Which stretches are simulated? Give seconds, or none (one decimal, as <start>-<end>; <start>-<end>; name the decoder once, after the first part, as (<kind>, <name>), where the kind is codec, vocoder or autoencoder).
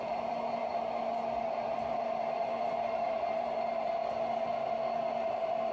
0.0-0.7 (vocoder, BigVGAN v2); 1.8-4.0; 5.3-5.7